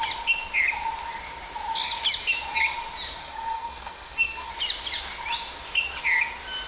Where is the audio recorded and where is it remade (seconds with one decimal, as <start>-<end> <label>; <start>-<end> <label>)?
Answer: 0.0-3.2 recorded; 3.2-4.5 remade; 4.5-6.7 recorded